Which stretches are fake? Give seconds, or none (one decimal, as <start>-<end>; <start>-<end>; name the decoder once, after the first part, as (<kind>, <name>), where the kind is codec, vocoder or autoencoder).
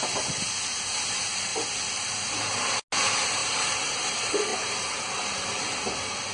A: 1.5-2.7 (vocoder, BigVGAN v2)